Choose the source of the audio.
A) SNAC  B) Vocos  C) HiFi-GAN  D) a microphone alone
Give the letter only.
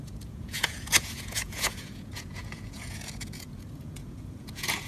B